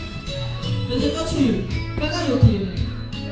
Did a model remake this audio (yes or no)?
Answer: yes